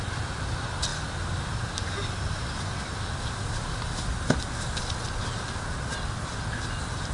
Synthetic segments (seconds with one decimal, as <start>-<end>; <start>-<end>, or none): none